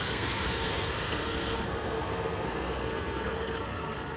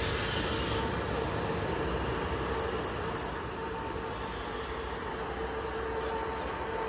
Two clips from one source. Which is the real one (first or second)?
second